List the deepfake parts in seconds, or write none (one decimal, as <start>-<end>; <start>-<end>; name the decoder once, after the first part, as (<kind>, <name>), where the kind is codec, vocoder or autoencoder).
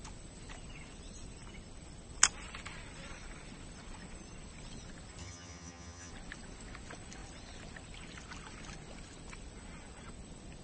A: 5.2-6.1 (vocoder, HiFi-GAN)